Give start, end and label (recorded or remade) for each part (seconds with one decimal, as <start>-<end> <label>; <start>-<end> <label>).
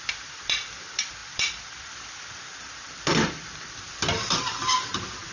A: 0.0-5.3 remade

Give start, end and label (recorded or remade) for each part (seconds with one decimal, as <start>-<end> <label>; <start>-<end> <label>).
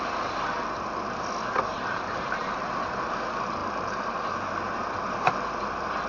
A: 0.0-1.7 recorded; 1.7-2.6 remade; 2.6-3.6 recorded; 3.6-4.3 remade; 4.3-6.1 recorded